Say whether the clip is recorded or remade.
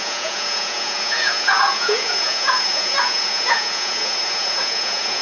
remade